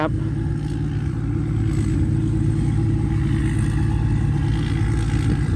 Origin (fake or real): real